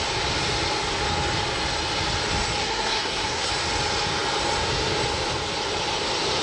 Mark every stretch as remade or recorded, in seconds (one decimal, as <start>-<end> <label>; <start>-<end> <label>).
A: 0.0-2.6 recorded; 2.6-3.5 remade; 3.5-6.4 recorded